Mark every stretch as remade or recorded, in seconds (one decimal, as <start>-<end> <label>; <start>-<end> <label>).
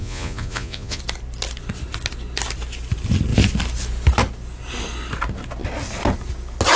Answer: 0.0-1.0 remade; 1.0-6.8 recorded